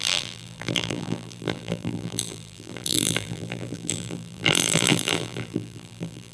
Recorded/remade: remade